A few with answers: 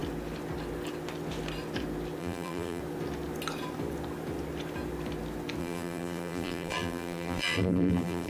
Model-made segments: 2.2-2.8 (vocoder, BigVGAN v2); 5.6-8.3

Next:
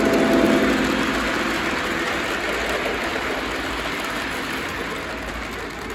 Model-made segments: none

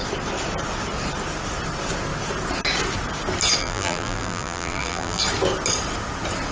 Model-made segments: 3.6-5.2 (vocoder, BigVGAN v2)

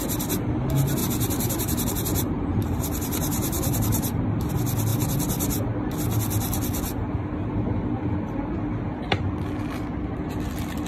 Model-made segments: 1.0-4.5 (vocoder, BigVGAN v2)

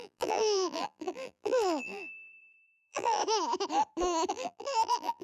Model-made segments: 0.0-3.2 (vocoder, BigVGAN v2); 4.3-5.2

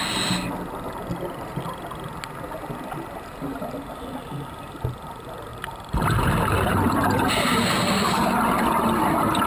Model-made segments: 5.5-7.3 (vocoder, BigVGAN v2)

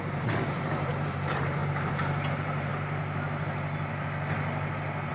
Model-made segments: 0.0-1.6 (vocoder, BigVGAN v2); 2.3-2.7